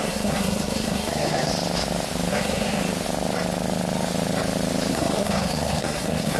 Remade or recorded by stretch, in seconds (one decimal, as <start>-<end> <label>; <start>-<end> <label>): 0.0-1.5 remade; 1.5-2.3 recorded; 2.3-2.8 remade; 2.8-4.9 recorded; 4.9-6.4 remade